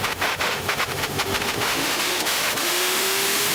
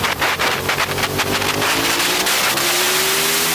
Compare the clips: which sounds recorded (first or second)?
second